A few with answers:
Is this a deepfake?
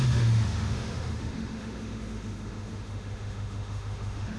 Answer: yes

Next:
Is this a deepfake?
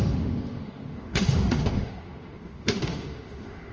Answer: yes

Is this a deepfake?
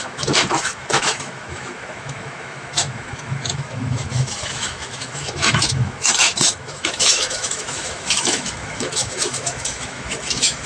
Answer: yes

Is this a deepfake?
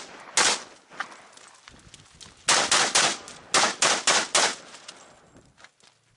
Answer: no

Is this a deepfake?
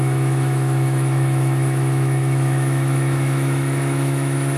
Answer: yes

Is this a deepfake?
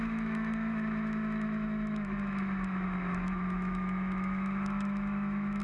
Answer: yes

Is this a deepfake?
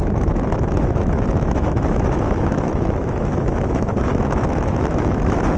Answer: yes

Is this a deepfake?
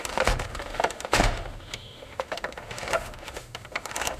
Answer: yes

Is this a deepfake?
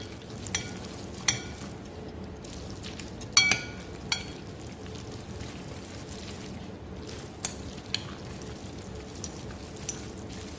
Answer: no